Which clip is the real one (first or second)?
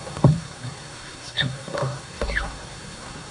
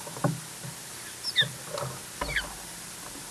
second